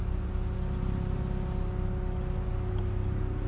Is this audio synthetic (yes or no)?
no